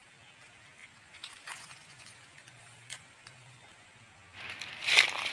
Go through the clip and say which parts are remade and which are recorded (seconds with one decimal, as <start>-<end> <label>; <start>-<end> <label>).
0.0-0.8 recorded; 0.8-4.0 remade; 4.0-5.3 recorded

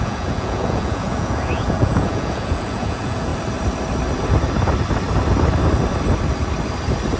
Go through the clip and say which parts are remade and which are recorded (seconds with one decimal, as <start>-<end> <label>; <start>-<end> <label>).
0.0-3.3 remade; 3.3-7.2 recorded

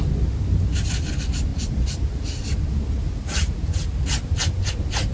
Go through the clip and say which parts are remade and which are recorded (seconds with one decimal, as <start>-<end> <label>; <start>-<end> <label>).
0.0-5.1 recorded

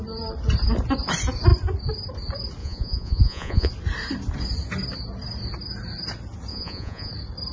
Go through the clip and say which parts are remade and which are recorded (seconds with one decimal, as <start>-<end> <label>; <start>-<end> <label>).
0.0-2.6 recorded; 2.6-3.7 remade; 3.7-6.5 recorded; 6.5-7.1 remade; 7.1-7.5 recorded

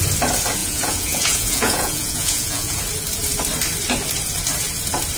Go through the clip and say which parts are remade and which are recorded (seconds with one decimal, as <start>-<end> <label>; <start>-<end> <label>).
0.0-0.6 recorded; 0.6-2.8 remade; 2.8-5.2 recorded

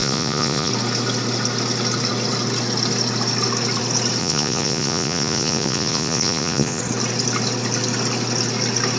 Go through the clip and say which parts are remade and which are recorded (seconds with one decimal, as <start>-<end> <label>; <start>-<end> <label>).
0.0-0.7 remade; 0.7-4.2 recorded; 4.2-6.8 remade; 6.8-9.0 recorded

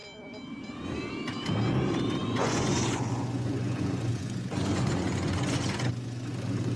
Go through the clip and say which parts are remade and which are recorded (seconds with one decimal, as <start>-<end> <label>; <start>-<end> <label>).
0.0-2.2 recorded; 2.2-6.3 remade; 6.3-6.8 recorded